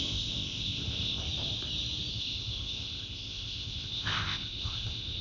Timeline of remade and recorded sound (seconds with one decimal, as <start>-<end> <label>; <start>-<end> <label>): 0.0-1.2 remade; 1.2-2.1 recorded; 2.1-5.2 remade